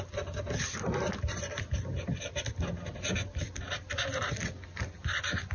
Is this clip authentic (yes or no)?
yes